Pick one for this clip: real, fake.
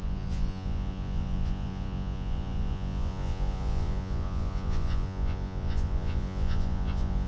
fake